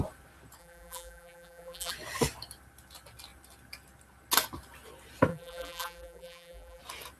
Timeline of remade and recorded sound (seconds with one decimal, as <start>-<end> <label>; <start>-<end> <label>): 0.0-0.6 recorded; 0.6-1.9 remade; 1.9-5.3 recorded; 5.3-6.8 remade; 6.8-7.2 recorded